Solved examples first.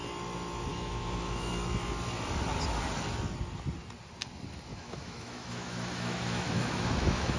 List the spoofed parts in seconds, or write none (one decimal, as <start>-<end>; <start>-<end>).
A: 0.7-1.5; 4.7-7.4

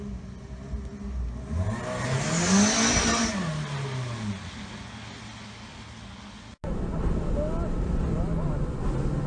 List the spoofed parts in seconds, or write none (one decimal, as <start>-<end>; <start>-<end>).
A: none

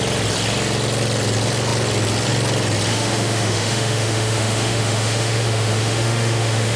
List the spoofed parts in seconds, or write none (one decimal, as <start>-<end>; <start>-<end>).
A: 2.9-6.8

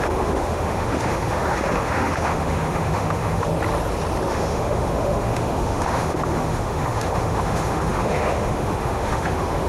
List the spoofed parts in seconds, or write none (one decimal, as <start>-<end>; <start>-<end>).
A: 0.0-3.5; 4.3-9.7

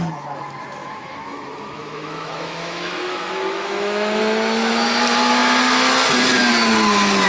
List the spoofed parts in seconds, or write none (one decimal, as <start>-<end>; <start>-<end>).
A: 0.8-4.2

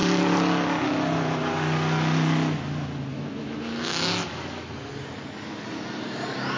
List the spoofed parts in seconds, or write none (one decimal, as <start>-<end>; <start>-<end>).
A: 3.1-4.9

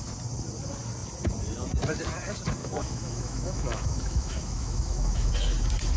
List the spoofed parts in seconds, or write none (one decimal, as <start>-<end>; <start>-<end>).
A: 2.6-5.3

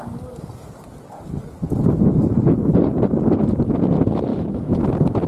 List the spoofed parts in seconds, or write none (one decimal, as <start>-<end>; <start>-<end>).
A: 4.3-4.8